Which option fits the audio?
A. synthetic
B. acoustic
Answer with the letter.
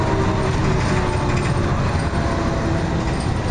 B